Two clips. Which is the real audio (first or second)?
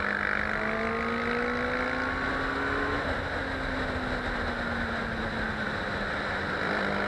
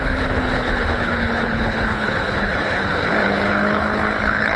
first